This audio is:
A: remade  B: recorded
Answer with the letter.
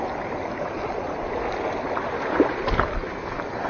B